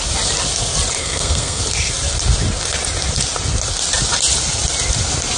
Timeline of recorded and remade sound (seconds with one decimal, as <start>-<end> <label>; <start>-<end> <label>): 0.0-1.0 recorded; 1.0-1.6 remade; 1.6-5.4 recorded